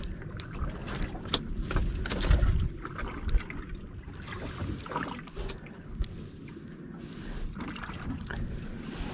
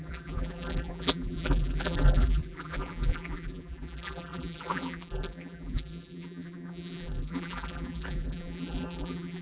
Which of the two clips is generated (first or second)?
second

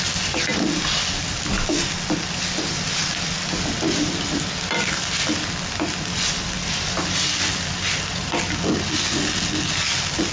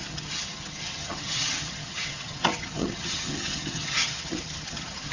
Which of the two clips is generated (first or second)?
second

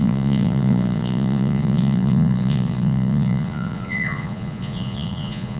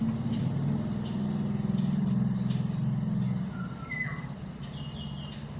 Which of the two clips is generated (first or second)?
first